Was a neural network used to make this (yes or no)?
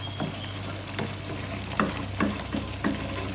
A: no